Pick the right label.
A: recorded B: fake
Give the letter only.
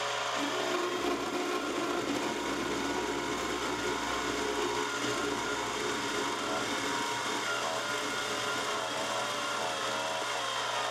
A